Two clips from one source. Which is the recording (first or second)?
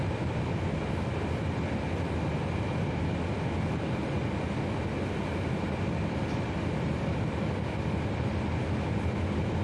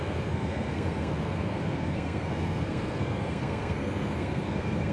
first